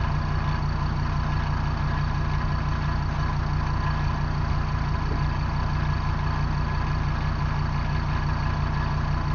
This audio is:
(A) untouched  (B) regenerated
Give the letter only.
A